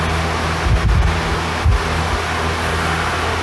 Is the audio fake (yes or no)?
no